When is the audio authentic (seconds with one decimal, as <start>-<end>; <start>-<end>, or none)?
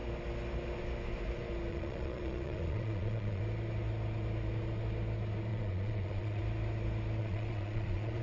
0.0-1.7; 3.4-5.5; 6.4-7.2